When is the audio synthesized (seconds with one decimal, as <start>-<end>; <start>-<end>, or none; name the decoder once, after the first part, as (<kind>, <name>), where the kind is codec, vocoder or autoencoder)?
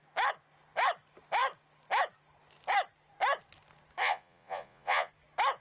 4.0-5.1 (vocoder, Vocos)